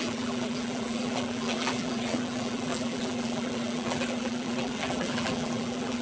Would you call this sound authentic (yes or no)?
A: no